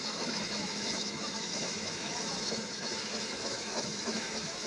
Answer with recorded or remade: remade